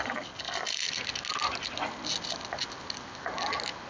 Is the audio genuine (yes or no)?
yes